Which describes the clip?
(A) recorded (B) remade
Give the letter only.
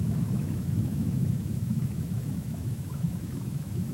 B